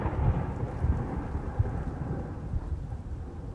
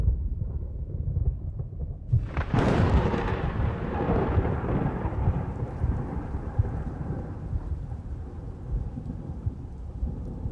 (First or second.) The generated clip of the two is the second